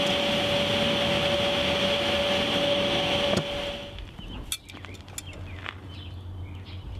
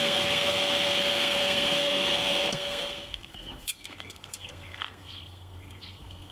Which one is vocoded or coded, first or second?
second